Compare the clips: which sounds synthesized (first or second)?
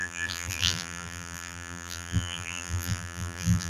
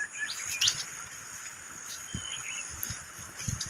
first